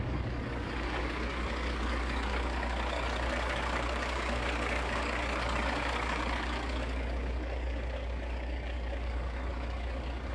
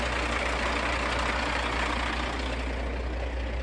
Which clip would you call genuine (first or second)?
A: second